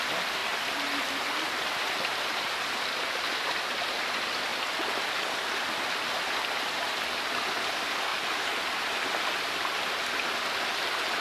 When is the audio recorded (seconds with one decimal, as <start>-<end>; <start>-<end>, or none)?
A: 0.0-11.2